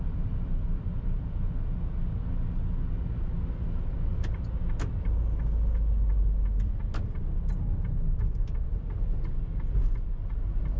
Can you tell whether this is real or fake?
real